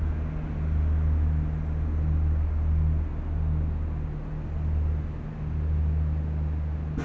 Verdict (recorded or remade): recorded